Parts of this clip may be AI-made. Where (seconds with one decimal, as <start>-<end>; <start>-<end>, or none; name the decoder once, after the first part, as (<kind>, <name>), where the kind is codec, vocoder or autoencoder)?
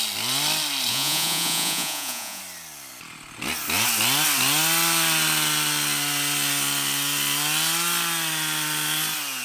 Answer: 0.9-2.4 (vocoder, Vocos)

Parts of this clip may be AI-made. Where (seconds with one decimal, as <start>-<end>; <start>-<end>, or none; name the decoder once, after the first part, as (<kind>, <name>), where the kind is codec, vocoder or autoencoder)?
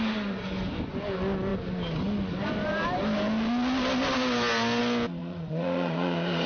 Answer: 5.2-6.5 (vocoder, Vocos)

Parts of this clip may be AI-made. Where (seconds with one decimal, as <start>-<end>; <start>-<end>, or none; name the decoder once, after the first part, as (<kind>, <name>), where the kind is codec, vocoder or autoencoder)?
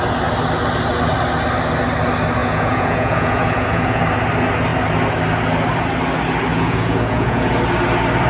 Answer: 2.4-4.0 (vocoder, Vocos); 6.5-7.5